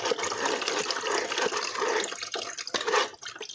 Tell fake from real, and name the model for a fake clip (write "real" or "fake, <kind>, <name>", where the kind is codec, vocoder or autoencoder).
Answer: real